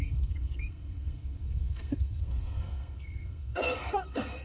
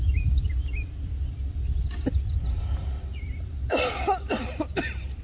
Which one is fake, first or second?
first